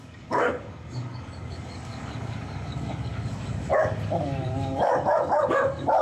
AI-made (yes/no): yes